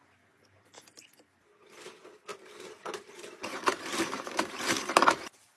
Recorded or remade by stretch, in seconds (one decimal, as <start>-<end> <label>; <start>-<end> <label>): 0.0-2.3 recorded; 2.3-4.9 remade; 4.9-5.6 recorded